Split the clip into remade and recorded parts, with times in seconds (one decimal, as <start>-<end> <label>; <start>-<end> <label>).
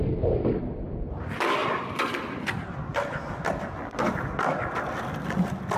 0.0-5.8 recorded